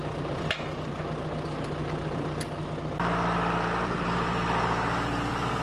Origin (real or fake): fake